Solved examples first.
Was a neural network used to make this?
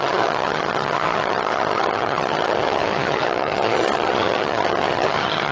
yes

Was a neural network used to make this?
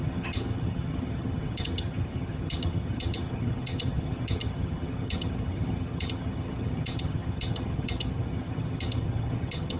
yes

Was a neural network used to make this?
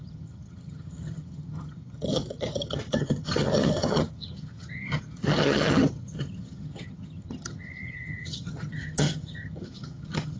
yes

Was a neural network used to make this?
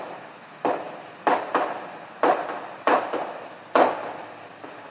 no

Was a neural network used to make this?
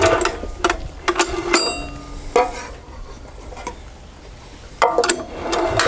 no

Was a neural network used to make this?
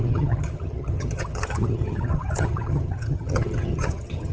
yes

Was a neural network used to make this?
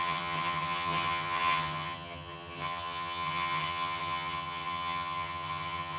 yes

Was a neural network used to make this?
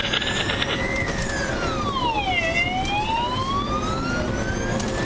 no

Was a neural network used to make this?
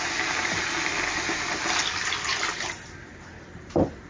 no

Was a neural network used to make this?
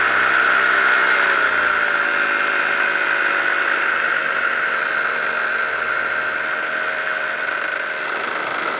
no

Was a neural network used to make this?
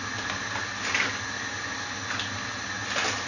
no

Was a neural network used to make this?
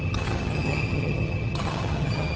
yes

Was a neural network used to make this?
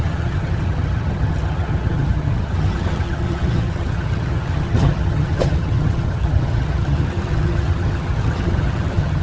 yes